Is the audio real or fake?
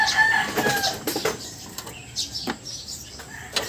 real